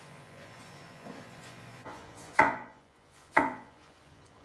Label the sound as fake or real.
fake